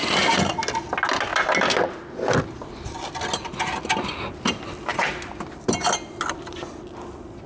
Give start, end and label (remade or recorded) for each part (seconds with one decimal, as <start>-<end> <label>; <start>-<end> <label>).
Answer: 0.0-7.5 recorded

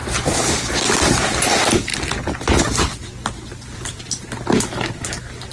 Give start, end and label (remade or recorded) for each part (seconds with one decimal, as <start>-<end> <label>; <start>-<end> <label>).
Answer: 0.0-1.2 recorded; 1.2-1.9 remade; 1.9-4.5 recorded; 4.5-5.5 remade